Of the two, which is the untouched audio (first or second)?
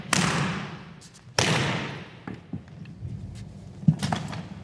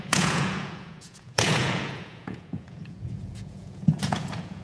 first